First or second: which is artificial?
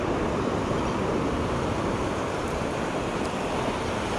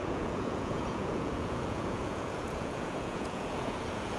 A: second